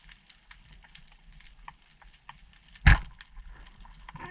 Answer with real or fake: real